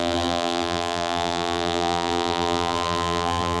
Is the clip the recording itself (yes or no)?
no